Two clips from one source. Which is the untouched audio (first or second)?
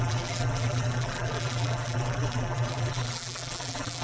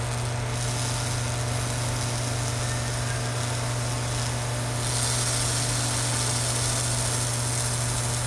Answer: second